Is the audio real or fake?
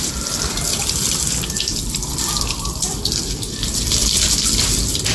fake